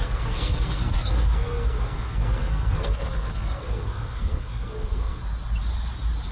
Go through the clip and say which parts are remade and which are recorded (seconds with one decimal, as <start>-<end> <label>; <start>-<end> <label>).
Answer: 0.0-5.2 remade; 5.2-6.3 recorded